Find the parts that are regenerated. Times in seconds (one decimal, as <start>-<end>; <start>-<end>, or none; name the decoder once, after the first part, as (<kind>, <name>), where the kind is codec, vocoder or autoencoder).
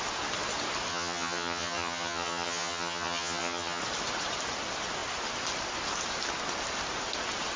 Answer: 0.9-3.8 (vocoder, HiFi-GAN)